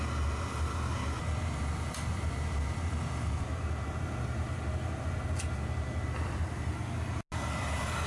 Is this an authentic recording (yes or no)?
yes